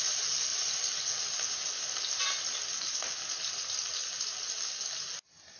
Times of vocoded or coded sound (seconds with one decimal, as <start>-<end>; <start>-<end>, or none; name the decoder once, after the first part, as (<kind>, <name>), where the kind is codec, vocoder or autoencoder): none